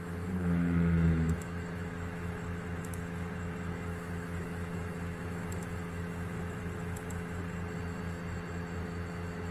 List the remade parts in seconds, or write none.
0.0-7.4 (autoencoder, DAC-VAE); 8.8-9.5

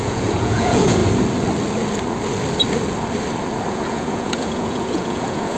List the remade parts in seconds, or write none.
0.0-1.0 (vocoder, Vocos); 3.7-5.6

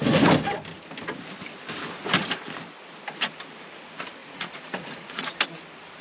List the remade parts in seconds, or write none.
4.2-5.3 (vocoder, Vocos)

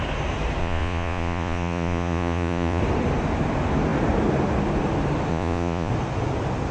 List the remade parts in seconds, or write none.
0.6-2.8 (vocoder, Vocos); 5.3-5.9

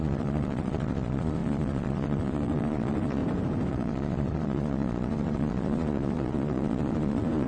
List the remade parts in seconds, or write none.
0.0-3.2 (vocoder, Vocos); 3.7-7.5

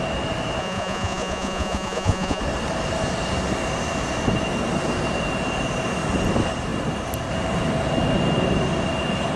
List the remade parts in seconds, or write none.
0.6-2.4 (vocoder, Vocos)

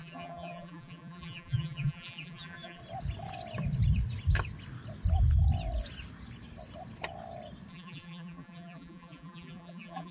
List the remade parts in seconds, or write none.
0.0-2.8 (vocoder, BigVGAN v2); 7.7-10.1